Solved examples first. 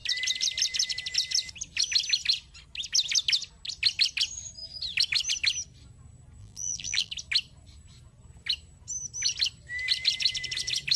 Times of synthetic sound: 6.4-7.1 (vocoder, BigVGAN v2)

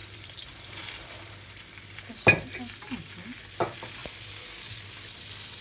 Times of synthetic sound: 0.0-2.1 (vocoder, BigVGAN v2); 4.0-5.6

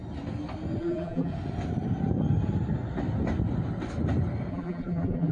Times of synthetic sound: 0.8-1.3 (vocoder, BigVGAN v2); 4.5-5.3

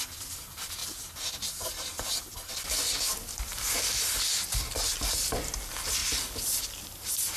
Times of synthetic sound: 0.0-0.8 (vocoder, BigVGAN v2); 1.4-6.0; 6.8-7.4